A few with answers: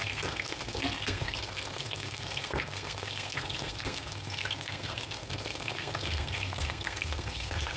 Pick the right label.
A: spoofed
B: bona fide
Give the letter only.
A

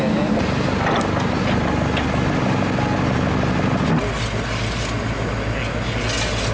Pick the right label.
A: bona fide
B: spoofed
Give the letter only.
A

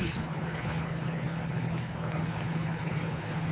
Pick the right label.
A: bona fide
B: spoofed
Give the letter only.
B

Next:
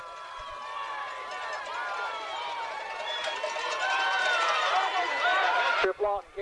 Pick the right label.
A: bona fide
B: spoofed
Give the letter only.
B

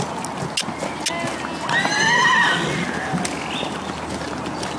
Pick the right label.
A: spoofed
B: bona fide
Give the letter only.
B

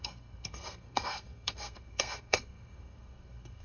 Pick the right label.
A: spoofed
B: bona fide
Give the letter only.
A